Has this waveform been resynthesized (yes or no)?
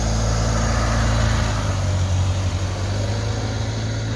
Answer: no